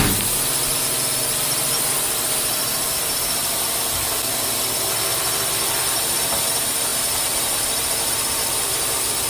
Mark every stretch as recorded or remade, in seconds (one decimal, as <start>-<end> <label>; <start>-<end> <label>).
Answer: 0.0-2.6 recorded; 2.6-3.6 remade; 3.6-6.9 recorded; 6.9-9.3 remade